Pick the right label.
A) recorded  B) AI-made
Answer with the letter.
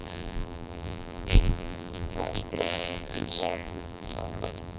B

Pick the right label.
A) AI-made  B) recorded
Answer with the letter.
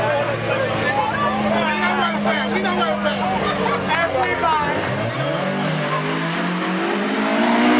B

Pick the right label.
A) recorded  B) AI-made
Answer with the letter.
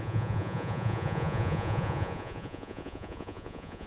B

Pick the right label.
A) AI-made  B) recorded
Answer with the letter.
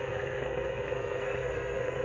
A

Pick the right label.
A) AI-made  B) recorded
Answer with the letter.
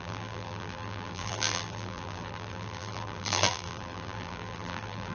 A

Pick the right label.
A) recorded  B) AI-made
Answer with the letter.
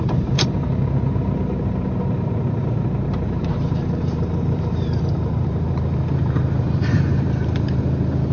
B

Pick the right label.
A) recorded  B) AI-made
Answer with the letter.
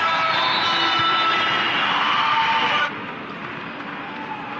A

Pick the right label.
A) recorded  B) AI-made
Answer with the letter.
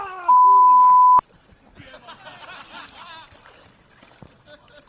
A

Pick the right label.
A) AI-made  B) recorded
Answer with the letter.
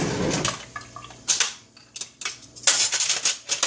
B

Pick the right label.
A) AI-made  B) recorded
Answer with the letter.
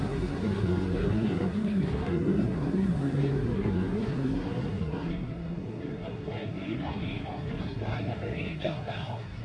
A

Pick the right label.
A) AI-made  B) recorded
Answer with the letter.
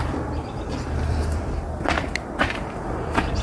A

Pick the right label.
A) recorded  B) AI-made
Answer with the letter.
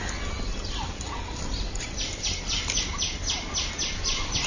A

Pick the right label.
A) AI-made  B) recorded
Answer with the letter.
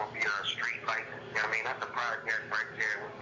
B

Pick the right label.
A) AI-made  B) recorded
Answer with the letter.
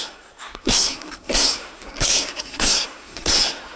A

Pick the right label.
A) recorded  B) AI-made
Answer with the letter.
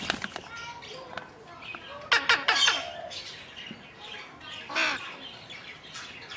A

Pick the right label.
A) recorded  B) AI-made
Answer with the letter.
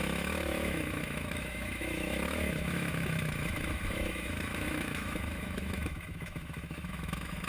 B